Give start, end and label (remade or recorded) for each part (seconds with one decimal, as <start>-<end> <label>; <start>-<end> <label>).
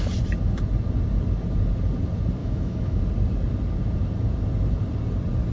0.0-2.4 recorded; 2.4-3.0 remade; 3.0-5.5 recorded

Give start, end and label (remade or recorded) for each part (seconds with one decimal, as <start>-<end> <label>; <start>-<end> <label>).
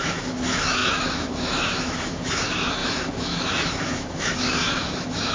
0.0-5.3 remade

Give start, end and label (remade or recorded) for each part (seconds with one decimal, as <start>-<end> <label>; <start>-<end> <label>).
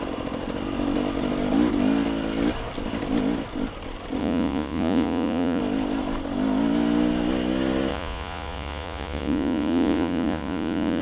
0.0-4.2 recorded; 4.2-5.6 remade; 5.6-7.9 recorded; 7.9-11.0 remade